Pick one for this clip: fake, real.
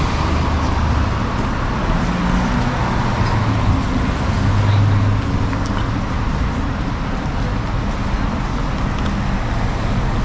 real